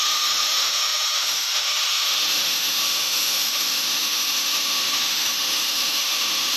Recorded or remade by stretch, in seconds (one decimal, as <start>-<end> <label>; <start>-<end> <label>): 0.0-6.6 remade